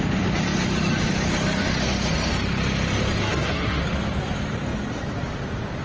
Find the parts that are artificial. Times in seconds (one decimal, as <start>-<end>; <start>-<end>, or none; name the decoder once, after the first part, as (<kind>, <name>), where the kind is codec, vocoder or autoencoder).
3.2-3.8 (codec, SNAC)